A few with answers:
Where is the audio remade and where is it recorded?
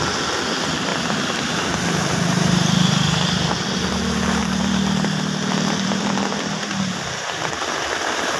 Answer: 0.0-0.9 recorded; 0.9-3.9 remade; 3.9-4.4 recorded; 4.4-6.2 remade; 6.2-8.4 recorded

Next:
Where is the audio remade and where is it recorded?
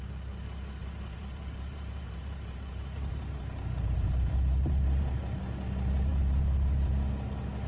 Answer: 0.0-0.8 recorded; 0.8-5.4 remade; 5.4-6.1 recorded; 6.1-6.9 remade; 6.9-7.7 recorded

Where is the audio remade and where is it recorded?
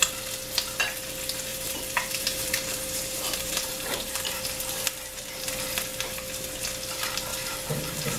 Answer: 0.0-1.5 recorded; 1.5-4.4 remade; 4.4-7.3 recorded; 7.3-8.2 remade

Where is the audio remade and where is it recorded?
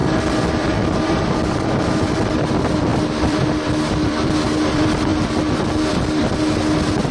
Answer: 0.0-5.1 remade; 5.1-5.9 recorded; 5.9-7.1 remade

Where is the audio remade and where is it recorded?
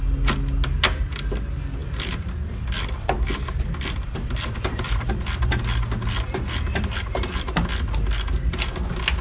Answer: 0.0-1.8 recorded; 1.8-5.1 remade; 5.1-9.2 recorded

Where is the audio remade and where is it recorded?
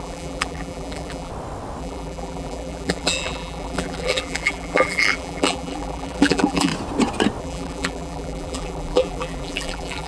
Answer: 0.0-1.3 remade; 1.3-1.8 recorded; 1.8-6.7 remade; 6.7-7.4 recorded; 7.4-10.1 remade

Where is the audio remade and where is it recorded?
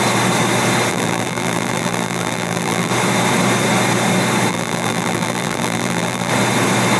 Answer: 0.0-0.9 recorded; 0.9-2.9 remade; 2.9-4.5 recorded; 4.5-6.3 remade; 6.3-7.0 recorded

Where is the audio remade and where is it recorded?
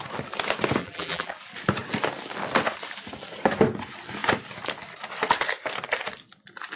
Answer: 0.0-0.8 recorded; 0.8-1.3 remade; 1.3-6.8 recorded